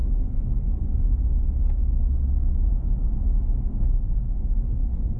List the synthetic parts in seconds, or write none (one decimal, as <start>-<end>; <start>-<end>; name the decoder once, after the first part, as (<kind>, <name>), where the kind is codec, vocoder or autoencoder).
0.0-1.0 (codec, DAC); 4.2-5.2